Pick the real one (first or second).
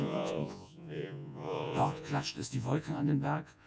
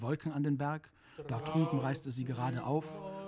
second